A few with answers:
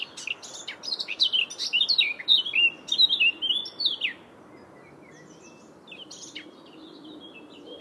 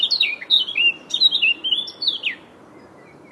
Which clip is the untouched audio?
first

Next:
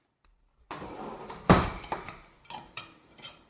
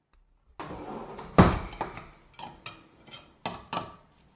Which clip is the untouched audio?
second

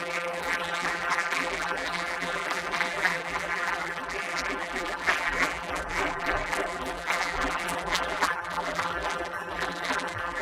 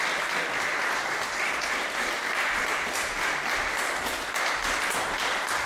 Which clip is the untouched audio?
second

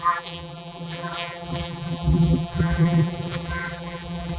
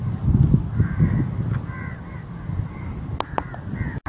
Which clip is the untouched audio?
second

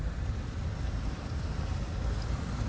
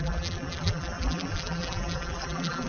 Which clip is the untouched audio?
first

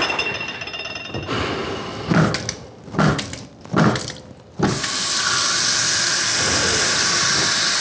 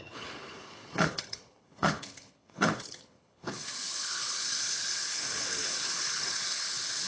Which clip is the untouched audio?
first